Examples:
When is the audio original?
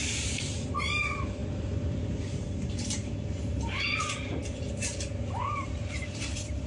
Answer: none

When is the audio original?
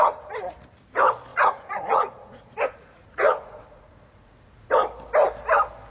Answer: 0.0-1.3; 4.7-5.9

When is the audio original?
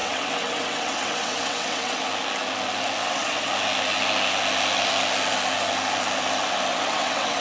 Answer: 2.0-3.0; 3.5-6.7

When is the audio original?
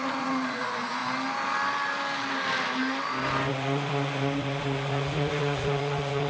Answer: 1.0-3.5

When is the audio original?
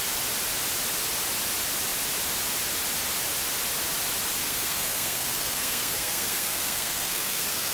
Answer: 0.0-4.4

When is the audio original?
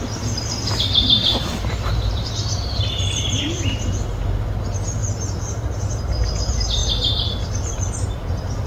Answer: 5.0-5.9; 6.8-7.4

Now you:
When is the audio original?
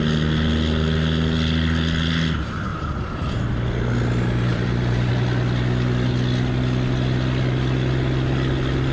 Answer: 0.0-2.7; 3.5-4.5; 5.1-8.9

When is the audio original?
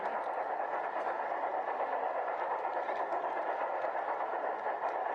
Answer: 0.0-5.1